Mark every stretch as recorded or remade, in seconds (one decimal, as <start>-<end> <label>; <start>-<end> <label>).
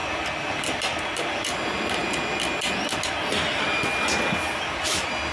0.0-5.3 recorded